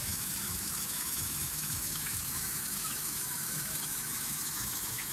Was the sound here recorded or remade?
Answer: remade